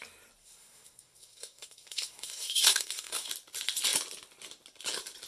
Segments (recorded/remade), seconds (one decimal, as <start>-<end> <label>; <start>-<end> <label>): 0.0-0.4 recorded; 0.4-3.3 remade; 3.3-5.3 recorded